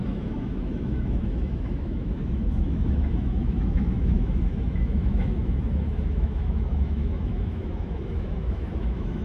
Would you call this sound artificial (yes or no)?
yes